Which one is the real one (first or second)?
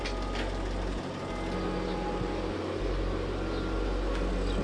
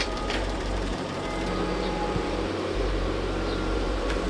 first